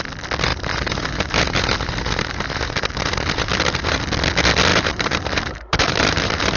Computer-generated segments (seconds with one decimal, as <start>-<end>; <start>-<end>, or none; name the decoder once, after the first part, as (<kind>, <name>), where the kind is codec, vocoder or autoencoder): 0.5-4.0 (vocoder, BigVGAN v2); 4.7-6.6